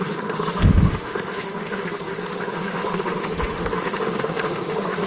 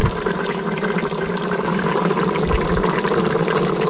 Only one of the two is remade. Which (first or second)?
first